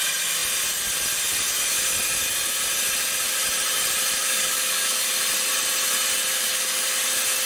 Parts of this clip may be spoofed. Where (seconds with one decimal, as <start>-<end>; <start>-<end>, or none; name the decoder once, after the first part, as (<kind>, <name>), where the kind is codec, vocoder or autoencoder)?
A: 4.2-5.1 (codec, DAC); 6.3-7.0